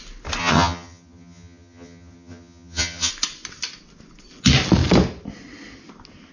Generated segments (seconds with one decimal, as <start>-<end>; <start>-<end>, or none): 0.4-3.1